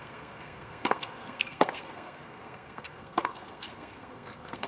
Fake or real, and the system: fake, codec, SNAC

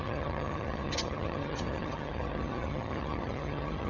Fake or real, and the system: fake, vocoder, HiFi-GAN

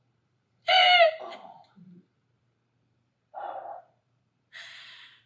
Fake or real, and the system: fake, vocoder, BigVGAN v2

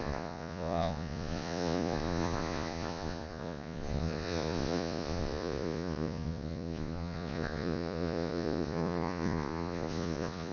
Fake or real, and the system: fake, vocoder, Vocos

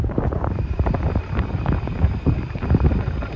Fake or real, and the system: fake, vocoder, BigVGAN v2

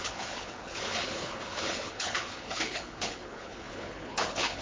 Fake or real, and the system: fake, codec, HILCodec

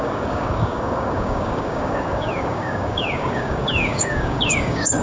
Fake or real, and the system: fake, codec, DAC